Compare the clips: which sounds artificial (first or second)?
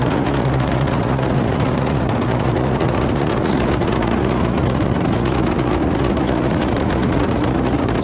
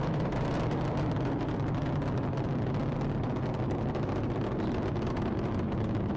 first